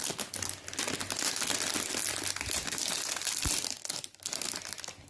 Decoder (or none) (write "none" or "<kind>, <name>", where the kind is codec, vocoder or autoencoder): none